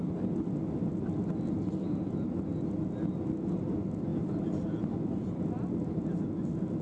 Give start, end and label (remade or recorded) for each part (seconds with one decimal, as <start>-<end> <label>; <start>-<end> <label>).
0.0-6.8 recorded